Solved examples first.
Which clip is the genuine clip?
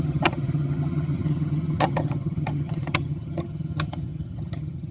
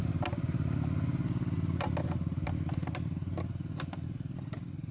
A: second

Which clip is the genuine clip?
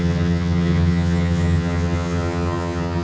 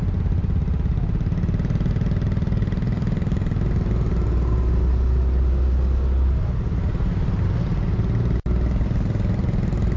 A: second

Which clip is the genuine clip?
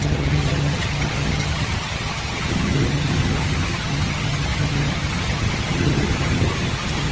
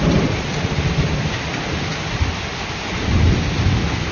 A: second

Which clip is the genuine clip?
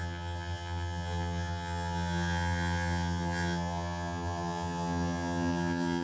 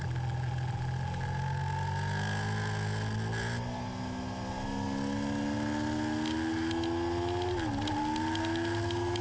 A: second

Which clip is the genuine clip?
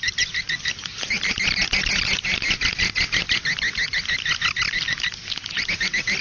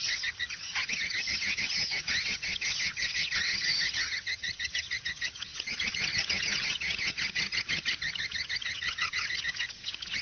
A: first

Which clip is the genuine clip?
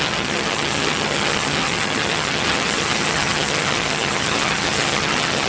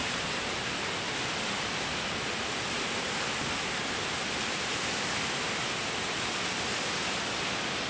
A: second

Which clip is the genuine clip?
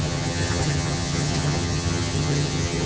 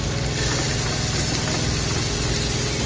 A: second